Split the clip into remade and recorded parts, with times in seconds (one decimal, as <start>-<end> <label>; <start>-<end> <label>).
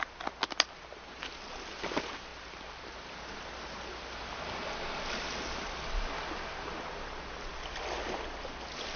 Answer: 0.0-9.0 recorded